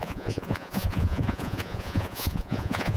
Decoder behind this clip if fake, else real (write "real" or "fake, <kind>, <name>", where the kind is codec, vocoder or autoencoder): fake, vocoder, Vocos